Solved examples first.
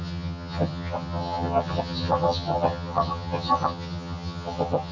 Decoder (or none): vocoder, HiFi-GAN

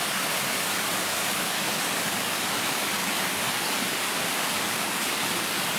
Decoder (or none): codec, DAC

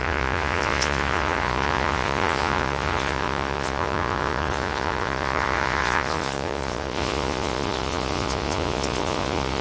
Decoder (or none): vocoder, Vocos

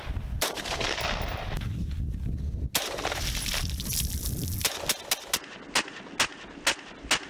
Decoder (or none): none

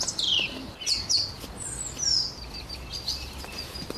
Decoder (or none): none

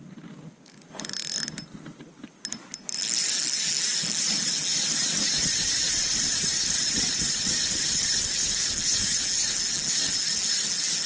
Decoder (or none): none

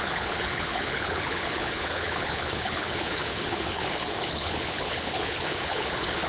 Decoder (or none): codec, HILCodec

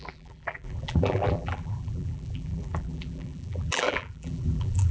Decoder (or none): vocoder, BigVGAN v2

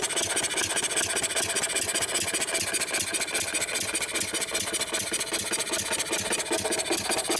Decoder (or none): none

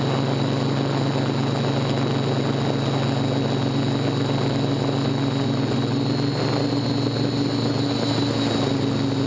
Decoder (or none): none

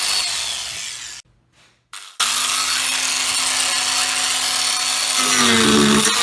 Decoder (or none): none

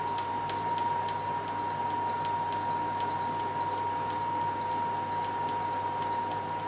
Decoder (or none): none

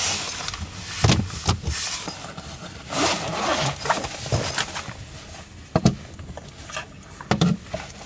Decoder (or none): none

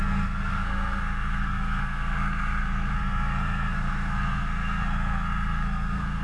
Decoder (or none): codec, SNAC